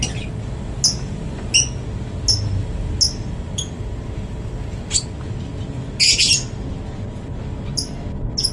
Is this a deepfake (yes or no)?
no